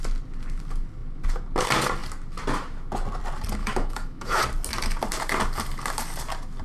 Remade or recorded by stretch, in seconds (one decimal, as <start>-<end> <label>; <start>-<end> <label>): 0.0-3.6 recorded; 3.6-4.4 remade; 4.4-6.6 recorded